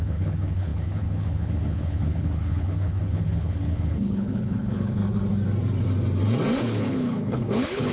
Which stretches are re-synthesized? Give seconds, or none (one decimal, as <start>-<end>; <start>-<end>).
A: 0.0-5.0; 6.6-7.9